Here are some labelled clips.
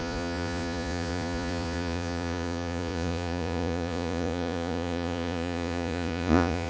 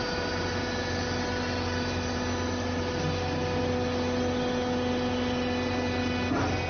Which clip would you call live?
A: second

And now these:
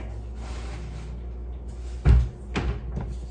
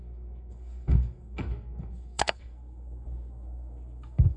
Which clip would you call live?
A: first